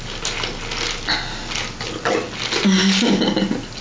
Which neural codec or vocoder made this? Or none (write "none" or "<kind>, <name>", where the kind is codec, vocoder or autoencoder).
none